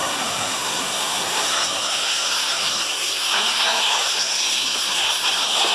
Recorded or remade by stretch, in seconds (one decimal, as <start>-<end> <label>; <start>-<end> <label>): 0.0-5.7 remade